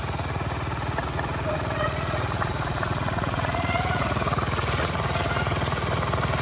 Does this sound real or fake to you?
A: fake